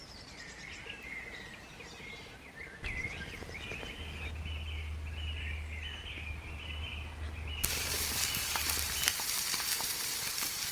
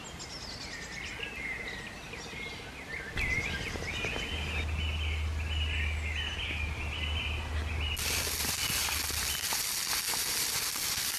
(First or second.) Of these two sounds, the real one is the second